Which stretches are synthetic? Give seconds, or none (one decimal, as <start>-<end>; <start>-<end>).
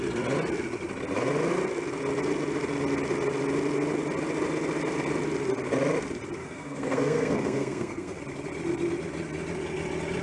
6.4-8.2